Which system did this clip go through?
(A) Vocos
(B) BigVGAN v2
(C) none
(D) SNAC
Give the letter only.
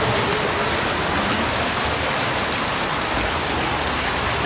C